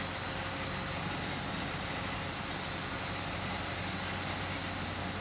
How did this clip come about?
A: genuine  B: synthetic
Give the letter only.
A